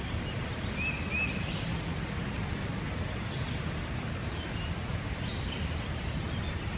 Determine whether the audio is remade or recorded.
recorded